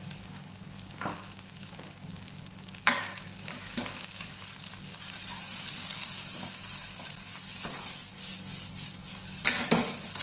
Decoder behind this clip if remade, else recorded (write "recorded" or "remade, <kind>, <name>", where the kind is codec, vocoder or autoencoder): remade, codec, DAC